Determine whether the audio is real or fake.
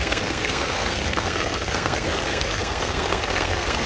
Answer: fake